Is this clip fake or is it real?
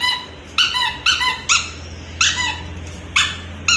real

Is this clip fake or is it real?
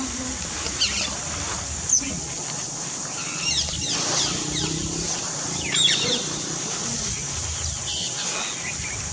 real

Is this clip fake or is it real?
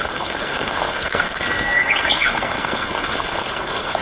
fake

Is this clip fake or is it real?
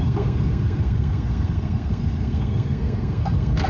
fake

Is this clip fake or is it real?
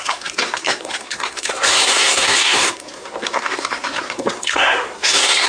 fake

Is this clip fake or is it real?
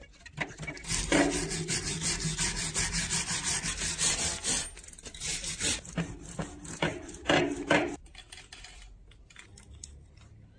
real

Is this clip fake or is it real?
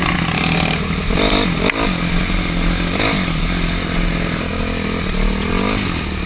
real